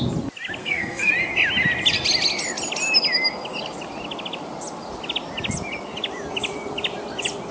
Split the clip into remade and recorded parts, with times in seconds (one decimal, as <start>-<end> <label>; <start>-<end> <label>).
0.0-0.6 recorded; 0.6-1.1 remade; 1.1-7.5 recorded

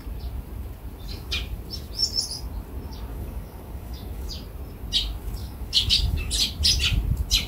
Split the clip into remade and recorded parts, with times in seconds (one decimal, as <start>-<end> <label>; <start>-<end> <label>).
0.0-3.1 recorded; 3.1-4.3 remade; 4.3-5.4 recorded; 5.4-6.3 remade; 6.3-7.5 recorded